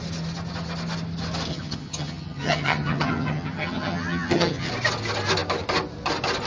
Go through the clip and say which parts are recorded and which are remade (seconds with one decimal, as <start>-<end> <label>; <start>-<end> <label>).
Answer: 0.0-1.5 recorded; 1.5-4.7 remade; 4.7-6.5 recorded